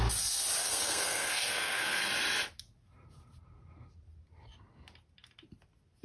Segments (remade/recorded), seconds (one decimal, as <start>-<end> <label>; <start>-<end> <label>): 0.0-0.6 recorded; 0.6-2.1 remade; 2.1-6.0 recorded